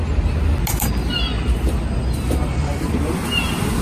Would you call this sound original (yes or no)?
yes